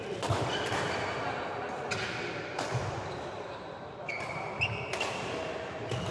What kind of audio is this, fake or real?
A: real